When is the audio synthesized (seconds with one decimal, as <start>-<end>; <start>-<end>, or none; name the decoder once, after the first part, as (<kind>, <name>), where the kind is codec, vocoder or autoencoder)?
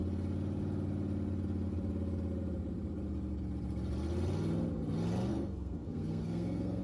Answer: 5.3-6.8 (codec, SNAC)